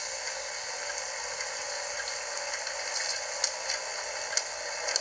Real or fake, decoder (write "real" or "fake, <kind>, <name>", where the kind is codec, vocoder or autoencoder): real